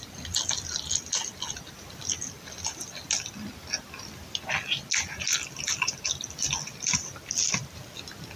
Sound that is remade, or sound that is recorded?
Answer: recorded